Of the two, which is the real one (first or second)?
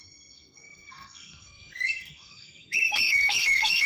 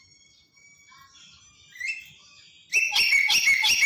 second